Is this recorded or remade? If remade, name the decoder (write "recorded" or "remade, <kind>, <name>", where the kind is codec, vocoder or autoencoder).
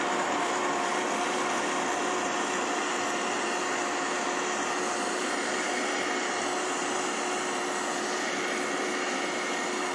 recorded